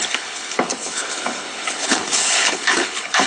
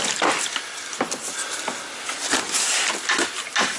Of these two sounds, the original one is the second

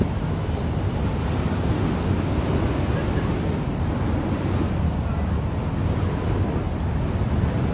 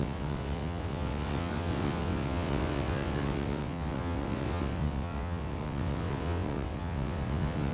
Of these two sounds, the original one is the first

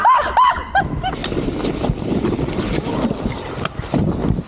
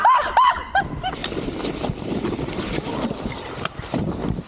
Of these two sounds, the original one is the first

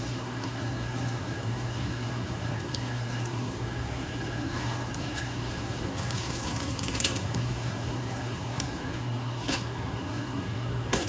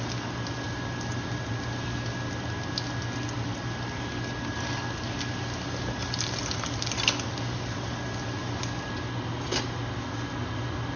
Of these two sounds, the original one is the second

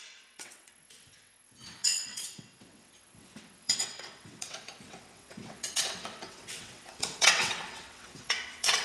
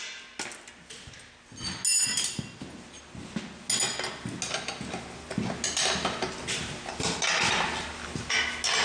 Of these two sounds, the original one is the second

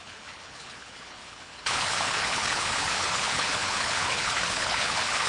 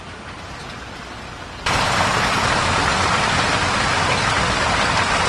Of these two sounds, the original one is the second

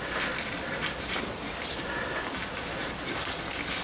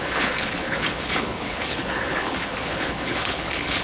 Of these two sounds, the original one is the first